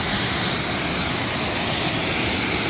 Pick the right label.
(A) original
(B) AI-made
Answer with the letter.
A